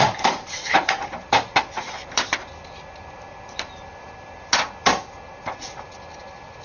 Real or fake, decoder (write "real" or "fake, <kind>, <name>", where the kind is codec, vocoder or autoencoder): fake, vocoder, BigVGAN v2